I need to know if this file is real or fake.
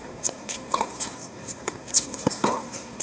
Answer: fake